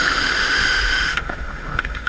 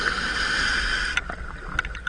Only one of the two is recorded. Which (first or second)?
second